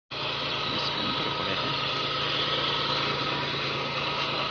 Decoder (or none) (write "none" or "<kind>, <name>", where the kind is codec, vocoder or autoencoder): none